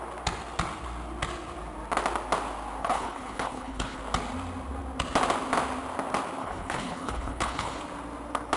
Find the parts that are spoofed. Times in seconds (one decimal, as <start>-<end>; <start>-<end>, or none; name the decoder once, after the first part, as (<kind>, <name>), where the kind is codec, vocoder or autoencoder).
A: 2.8-4.0 (codec, HILCodec); 6.4-7.8